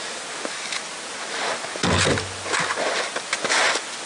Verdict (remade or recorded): recorded